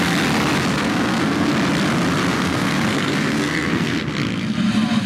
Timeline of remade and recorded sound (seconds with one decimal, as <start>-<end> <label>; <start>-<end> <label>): 0.0-0.7 recorded; 0.7-1.5 remade; 1.5-2.3 recorded; 2.3-4.0 remade; 4.0-5.1 recorded